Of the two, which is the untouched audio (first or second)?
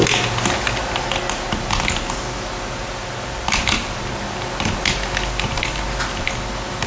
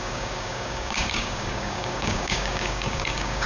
first